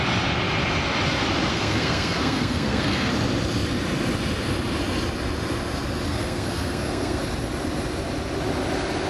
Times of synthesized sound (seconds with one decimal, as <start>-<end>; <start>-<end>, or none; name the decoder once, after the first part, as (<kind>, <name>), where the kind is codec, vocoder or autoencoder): 1.5-3.1 (codec, SNAC); 6.1-7.2